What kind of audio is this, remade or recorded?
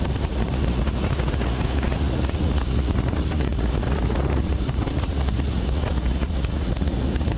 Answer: remade